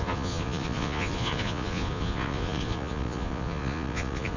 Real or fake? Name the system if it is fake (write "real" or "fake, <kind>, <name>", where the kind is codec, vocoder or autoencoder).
fake, vocoder, Vocos